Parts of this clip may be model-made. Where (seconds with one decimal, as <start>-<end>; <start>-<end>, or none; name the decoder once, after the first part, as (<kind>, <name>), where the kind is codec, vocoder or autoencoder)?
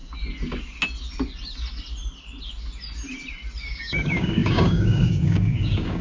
3.6-6.0 (codec, DAC)